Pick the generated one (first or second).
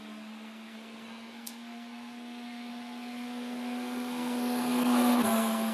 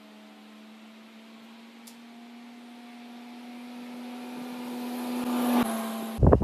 first